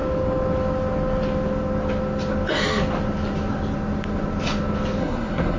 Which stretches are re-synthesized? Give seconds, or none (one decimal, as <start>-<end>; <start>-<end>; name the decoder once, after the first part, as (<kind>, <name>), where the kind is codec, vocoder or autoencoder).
5.0-5.6 (codec, SNAC)